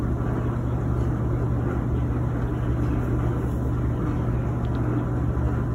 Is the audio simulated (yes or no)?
no